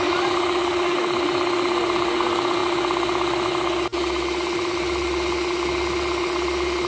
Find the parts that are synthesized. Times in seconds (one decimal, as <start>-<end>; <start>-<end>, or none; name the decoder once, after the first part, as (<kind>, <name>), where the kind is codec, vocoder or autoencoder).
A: none